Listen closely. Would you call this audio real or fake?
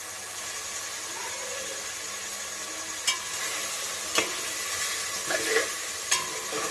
real